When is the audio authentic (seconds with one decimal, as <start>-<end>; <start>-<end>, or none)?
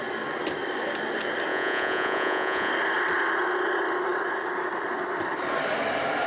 0.0-1.5; 2.7-6.3